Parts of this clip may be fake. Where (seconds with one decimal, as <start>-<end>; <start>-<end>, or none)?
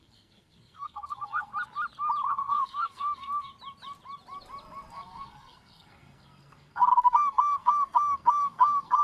0.0-1.5; 2.3-3.5; 4.9-9.0